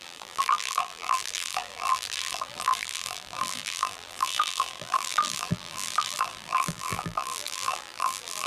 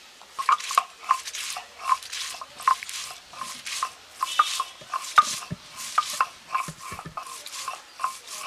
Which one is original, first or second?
second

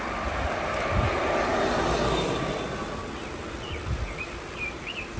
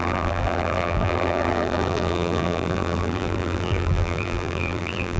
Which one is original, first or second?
first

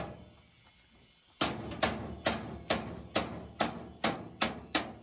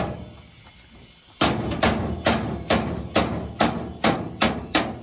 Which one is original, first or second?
first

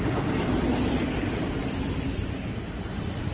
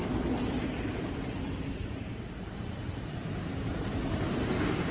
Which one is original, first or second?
second